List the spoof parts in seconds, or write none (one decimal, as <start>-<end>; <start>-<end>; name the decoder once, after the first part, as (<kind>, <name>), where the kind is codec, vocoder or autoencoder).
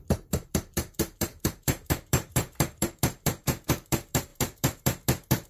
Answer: 0.0-5.5 (vocoder, BigVGAN v2)